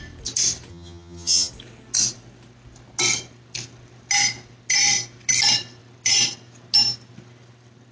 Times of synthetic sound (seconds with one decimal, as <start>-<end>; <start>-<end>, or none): 0.7-1.5